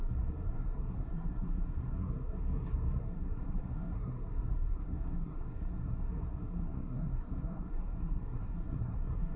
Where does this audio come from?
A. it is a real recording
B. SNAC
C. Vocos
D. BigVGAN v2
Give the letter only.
B